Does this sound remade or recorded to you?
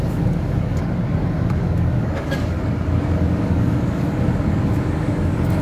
remade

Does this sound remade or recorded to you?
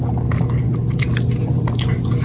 recorded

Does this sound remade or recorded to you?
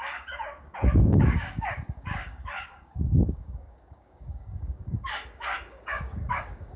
remade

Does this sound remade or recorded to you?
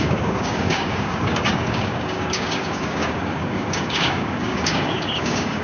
remade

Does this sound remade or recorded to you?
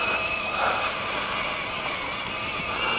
recorded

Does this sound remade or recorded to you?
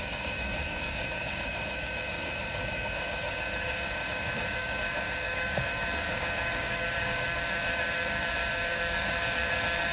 remade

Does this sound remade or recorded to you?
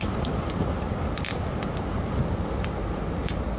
recorded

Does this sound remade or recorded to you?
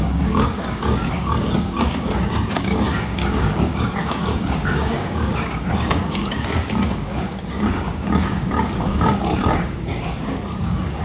remade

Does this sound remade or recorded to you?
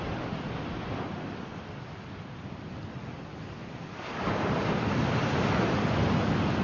recorded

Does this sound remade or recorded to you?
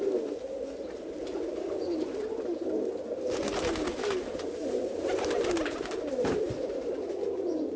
recorded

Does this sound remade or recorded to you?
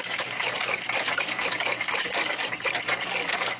remade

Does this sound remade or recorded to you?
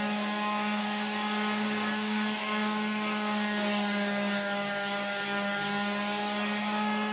remade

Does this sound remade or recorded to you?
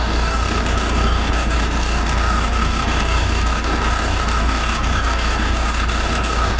remade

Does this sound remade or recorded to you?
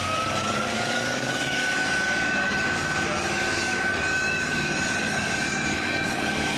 remade